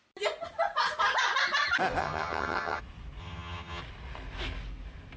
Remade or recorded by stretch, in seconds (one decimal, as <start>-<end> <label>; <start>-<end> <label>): 0.0-2.0 recorded; 2.0-2.8 remade; 2.8-3.2 recorded; 3.2-3.8 remade; 3.8-5.2 recorded